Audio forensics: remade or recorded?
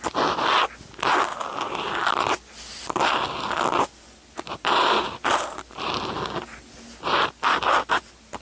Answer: recorded